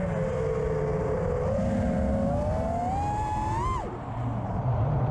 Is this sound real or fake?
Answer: real